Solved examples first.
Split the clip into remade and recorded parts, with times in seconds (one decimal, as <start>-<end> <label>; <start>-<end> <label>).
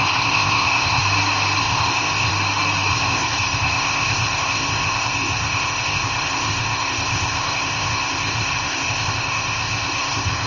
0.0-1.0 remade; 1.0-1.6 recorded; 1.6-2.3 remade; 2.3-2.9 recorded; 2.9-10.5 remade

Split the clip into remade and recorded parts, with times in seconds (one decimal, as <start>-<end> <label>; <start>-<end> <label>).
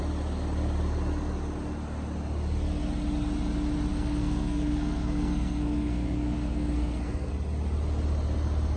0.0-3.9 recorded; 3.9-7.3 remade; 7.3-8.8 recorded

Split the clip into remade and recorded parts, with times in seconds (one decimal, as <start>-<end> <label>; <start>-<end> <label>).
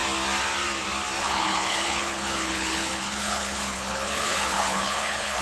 0.0-1.2 recorded; 1.2-5.4 remade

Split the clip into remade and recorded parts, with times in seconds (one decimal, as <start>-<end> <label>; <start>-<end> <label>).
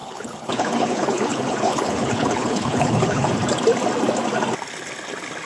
0.0-3.3 remade; 3.3-5.5 recorded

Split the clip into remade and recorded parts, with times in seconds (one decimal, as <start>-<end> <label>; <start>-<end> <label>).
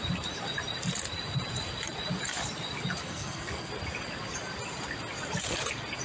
0.0-3.0 recorded; 3.0-3.7 remade; 3.7-6.0 recorded